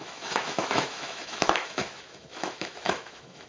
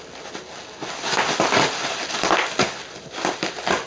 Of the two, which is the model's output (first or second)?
first